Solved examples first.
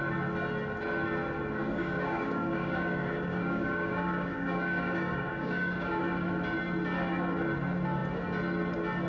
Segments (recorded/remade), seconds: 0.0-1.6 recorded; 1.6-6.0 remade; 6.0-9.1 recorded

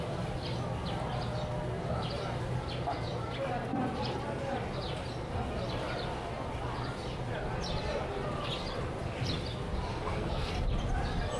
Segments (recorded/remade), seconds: 0.0-9.9 recorded; 9.9-10.5 remade; 10.5-11.4 recorded